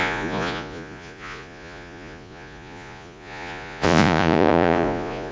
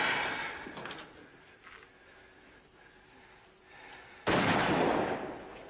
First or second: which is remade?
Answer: first